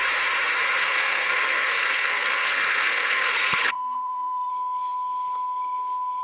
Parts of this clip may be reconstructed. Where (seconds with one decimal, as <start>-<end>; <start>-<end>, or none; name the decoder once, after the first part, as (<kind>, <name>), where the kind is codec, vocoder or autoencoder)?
0.8-4.5 (codec, SNAC)